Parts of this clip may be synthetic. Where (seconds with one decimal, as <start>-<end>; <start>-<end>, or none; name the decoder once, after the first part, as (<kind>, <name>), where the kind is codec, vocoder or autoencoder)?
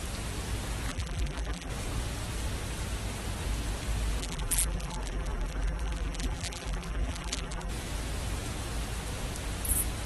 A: 0.9-1.7 (vocoder, BigVGAN v2); 4.2-7.7